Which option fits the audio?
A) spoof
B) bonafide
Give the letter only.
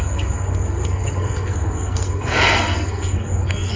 A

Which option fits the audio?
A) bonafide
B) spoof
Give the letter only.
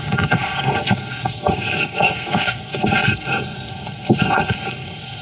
B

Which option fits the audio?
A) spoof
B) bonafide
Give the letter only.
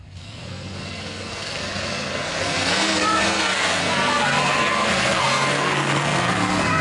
A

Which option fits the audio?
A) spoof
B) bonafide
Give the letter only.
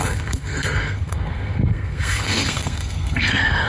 A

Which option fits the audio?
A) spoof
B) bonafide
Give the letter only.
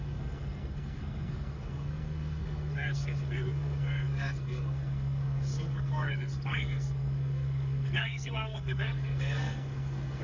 A